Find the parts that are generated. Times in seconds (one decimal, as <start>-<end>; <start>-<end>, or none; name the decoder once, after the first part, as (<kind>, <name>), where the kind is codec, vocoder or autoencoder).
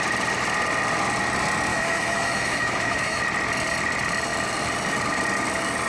1.7-3.2 (autoencoder, DAC-VAE)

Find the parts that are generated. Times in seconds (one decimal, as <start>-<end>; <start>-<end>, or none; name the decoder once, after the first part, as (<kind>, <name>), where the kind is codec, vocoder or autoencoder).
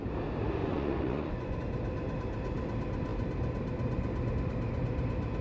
0.6-1.6 (vocoder, Vocos)